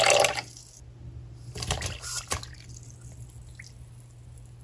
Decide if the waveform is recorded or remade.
recorded